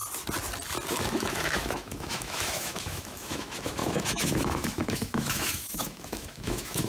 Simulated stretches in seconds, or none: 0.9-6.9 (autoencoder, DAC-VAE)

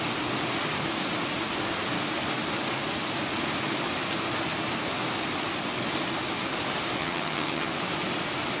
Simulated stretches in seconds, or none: 7.0-7.7 (vocoder, HiFi-GAN)

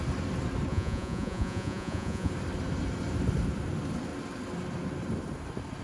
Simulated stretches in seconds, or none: 0.7-2.3 (vocoder, Vocos)

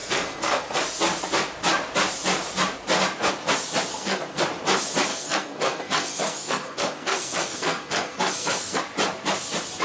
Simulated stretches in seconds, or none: 0.0-0.8 (codec, SNAC); 3.9-4.4; 5.1-8.8

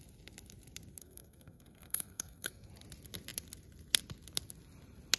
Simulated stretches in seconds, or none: 1.0-2.7 (codec, SNAC)

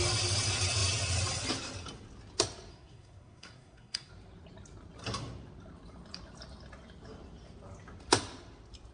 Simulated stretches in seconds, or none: 2.7-4.1 (codec, SNAC)

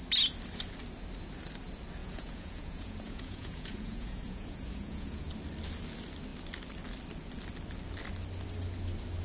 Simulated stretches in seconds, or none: 2.0-5.3 (vocoder, Vocos)

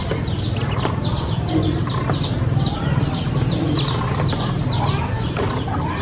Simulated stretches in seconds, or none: none